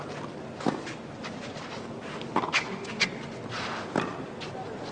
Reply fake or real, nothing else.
real